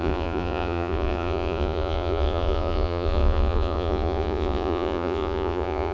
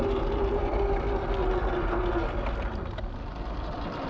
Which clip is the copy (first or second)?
first